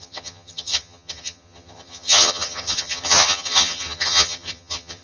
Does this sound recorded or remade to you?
remade